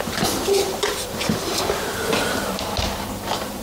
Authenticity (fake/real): fake